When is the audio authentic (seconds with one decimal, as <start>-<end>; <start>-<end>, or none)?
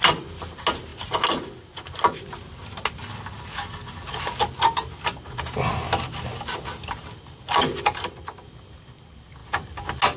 0.0-10.2